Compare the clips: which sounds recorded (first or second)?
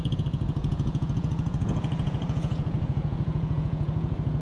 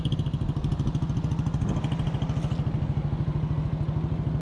second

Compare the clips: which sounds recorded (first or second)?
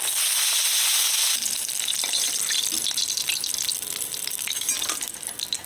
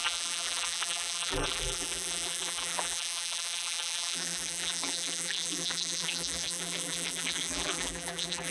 first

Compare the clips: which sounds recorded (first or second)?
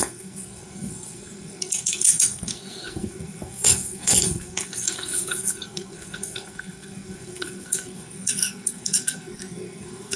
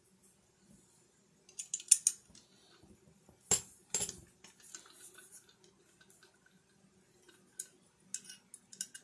second